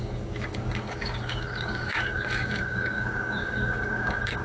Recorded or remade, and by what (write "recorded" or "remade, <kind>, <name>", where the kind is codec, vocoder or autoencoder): remade, codec, DAC